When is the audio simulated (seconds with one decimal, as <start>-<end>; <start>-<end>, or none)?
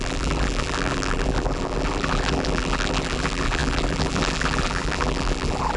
0.0-5.8